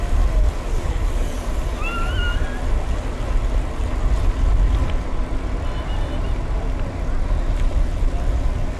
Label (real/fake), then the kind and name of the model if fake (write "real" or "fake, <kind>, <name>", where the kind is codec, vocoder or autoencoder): real